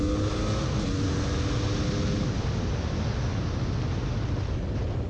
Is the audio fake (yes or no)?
no